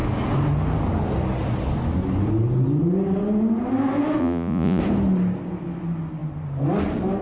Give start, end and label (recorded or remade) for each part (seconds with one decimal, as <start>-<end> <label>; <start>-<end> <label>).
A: 0.0-4.2 recorded; 4.2-4.8 remade; 4.8-7.2 recorded